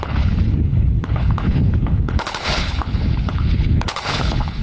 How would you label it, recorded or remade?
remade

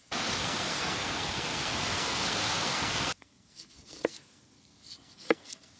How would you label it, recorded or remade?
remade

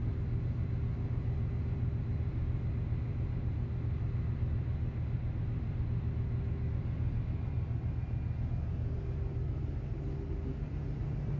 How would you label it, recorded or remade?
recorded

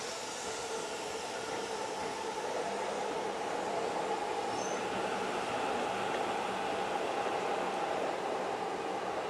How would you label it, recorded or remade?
recorded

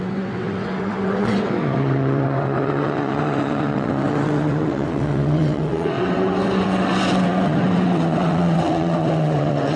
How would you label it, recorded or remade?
remade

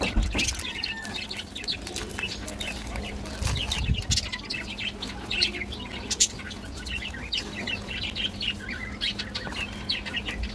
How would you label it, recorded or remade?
recorded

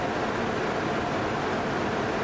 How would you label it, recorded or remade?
recorded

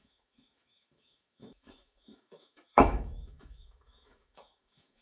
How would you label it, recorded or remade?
remade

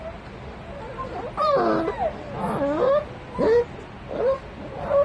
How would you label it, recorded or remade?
recorded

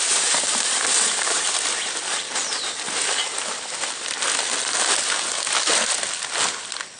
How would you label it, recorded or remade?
recorded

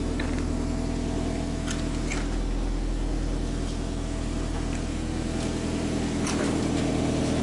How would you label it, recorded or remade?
recorded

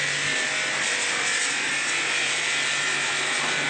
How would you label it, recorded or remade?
recorded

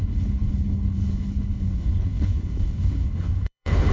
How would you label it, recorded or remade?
remade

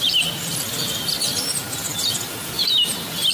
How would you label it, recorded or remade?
recorded